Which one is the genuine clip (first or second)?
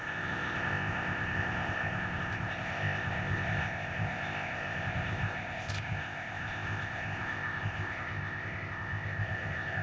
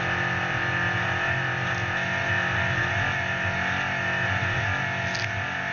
second